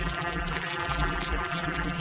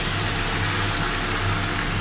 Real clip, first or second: second